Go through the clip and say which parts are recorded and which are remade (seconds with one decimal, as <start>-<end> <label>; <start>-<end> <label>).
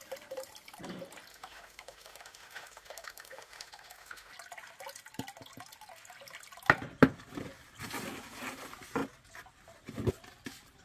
0.0-1.3 recorded; 1.3-4.3 remade; 4.3-10.8 recorded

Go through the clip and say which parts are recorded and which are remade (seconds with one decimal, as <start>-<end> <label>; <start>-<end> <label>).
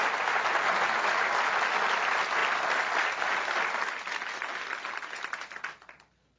0.0-6.4 recorded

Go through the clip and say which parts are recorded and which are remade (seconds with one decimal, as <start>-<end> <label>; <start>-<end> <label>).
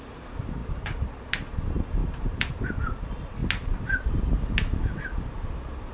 0.0-0.6 recorded; 0.6-1.2 remade; 1.2-2.0 recorded; 2.0-2.6 remade; 2.6-5.9 recorded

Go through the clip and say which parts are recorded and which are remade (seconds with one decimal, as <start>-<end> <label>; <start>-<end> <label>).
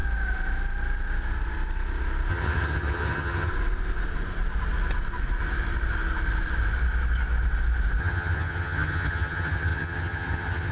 0.0-2.3 recorded; 2.3-3.5 remade; 3.5-8.0 recorded; 8.0-10.7 remade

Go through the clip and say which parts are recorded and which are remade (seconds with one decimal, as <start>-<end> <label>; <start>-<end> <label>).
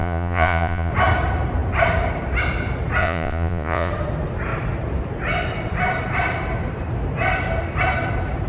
0.0-0.9 remade; 0.9-3.0 recorded; 3.0-3.9 remade; 3.9-8.5 recorded